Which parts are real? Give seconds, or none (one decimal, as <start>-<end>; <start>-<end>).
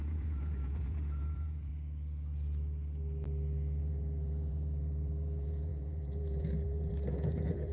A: 1.7-3.8